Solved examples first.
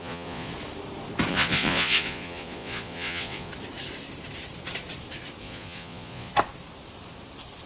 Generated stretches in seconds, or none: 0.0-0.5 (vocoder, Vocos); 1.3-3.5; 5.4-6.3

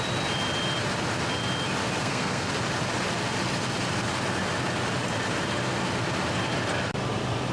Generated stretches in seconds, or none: 2.0-2.5 (codec, SNAC)

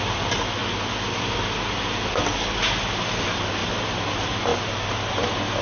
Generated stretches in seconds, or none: 0.0-0.6 (vocoder, BigVGAN v2); 2.2-5.6

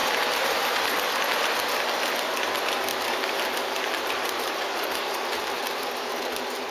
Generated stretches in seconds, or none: 0.0-0.8 (vocoder, BigVGAN v2); 2.9-6.3